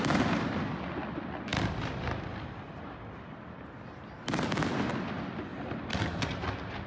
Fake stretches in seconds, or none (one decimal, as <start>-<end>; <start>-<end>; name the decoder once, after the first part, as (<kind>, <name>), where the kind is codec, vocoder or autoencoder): 5.5-6.5 (vocoder, BigVGAN v2)